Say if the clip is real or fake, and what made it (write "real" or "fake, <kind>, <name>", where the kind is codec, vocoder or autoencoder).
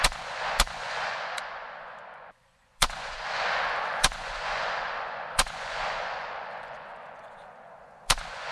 fake, vocoder, Vocos